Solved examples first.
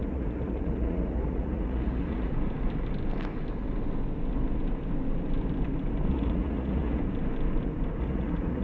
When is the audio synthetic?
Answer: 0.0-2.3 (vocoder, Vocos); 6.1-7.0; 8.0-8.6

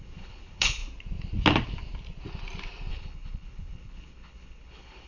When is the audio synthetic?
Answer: 0.0-0.8 (codec, HILCodec); 2.9-5.1

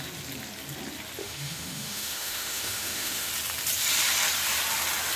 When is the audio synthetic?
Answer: 1.2-3.3 (autoencoder, DAC-VAE)

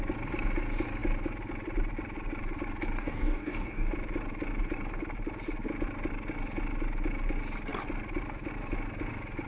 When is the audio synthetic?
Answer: 3.0-3.9 (codec, DAC)

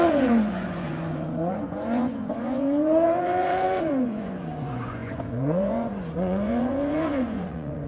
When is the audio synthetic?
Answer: 0.0-7.9 (vocoder, Vocos)

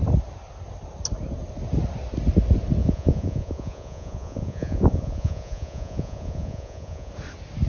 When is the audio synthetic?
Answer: 2.8-7.1 (vocoder, Vocos)

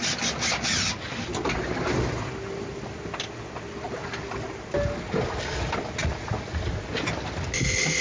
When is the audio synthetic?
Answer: 6.0-6.6 (vocoder, Vocos)

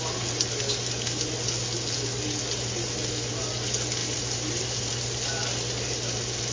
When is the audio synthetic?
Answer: 4.0-4.9 (vocoder, BigVGAN v2)